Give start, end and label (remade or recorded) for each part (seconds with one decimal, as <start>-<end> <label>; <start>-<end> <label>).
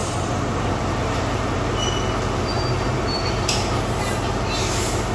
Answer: 0.0-5.1 recorded